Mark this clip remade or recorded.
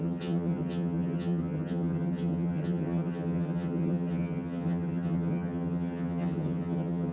remade